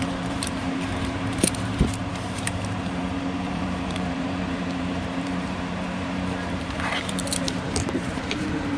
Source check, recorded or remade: remade